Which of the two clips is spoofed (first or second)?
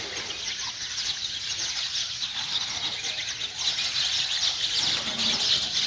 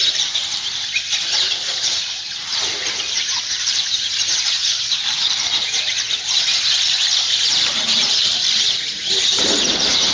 second